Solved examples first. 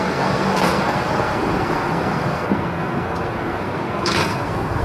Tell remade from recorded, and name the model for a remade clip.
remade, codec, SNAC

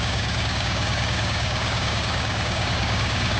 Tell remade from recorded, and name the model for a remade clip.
remade, codec, DAC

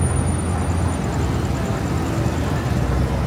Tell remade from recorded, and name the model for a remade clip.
recorded